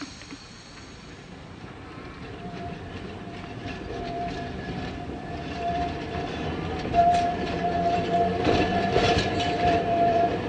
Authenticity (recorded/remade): remade